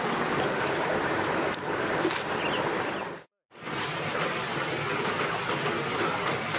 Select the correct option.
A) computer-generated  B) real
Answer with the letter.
B